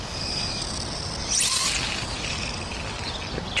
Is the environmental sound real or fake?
real